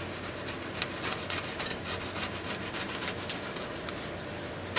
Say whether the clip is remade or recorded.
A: recorded